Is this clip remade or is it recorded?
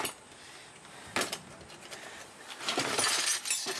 recorded